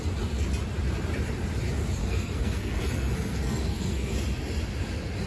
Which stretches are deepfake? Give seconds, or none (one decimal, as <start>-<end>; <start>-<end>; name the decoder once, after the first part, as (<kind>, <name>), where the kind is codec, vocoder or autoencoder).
2.0-4.1 (codec, SNAC)